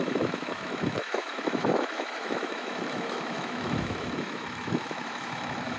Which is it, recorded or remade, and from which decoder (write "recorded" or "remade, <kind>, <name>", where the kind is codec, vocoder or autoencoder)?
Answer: remade, autoencoder, DAC-VAE